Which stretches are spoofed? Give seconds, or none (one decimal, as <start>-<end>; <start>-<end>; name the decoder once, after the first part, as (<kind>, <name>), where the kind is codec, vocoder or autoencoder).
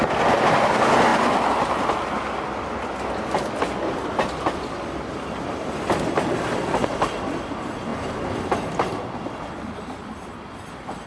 none